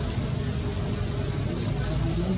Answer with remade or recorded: recorded